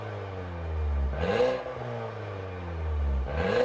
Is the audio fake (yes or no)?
no